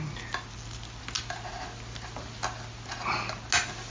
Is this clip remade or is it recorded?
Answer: recorded